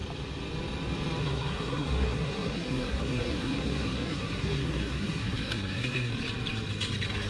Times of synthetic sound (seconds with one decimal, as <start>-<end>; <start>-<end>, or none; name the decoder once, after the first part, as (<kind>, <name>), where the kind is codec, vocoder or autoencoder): 1.2-6.1 (codec, SNAC)